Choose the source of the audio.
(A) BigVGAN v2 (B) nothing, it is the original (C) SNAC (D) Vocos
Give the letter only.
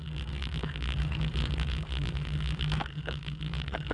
C